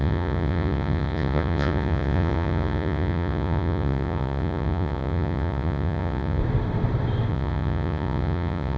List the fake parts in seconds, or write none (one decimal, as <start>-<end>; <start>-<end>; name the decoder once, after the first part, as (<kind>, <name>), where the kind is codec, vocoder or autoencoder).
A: 0.0-6.4 (vocoder, Vocos); 7.3-8.8